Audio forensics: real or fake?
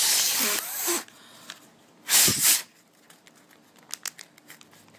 real